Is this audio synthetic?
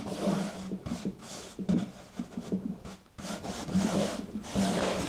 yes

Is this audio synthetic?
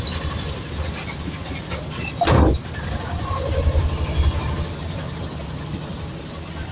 no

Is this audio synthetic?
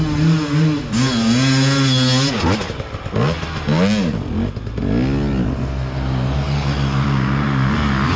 no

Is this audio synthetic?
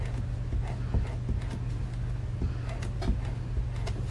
no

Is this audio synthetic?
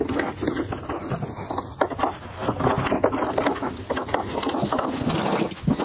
no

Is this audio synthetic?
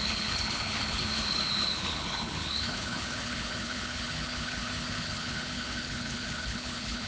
yes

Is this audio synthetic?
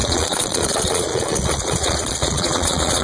yes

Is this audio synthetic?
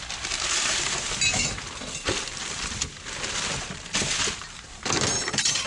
yes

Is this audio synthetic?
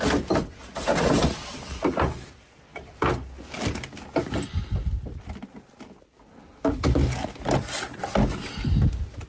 no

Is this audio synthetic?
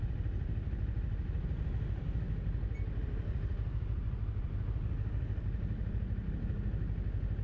no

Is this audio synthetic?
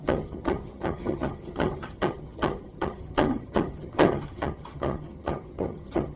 yes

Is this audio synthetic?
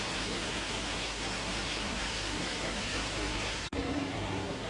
yes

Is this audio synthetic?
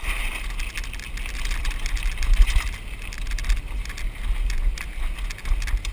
no